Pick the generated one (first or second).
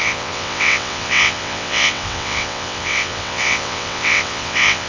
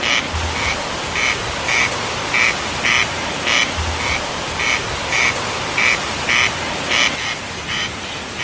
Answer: first